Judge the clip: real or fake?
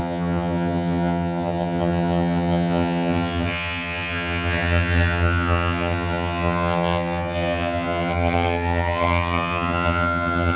fake